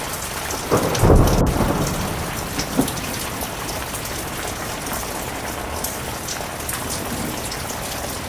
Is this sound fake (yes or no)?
no